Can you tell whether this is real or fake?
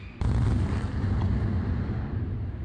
real